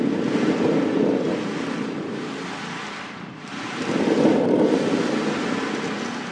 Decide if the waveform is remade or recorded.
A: recorded